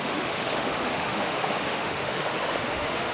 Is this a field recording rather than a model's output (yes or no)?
no